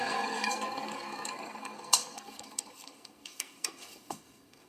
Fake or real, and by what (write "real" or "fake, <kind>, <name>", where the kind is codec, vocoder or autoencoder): fake, codec, SNAC